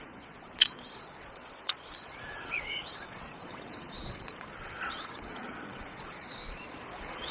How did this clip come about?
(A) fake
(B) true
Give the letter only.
A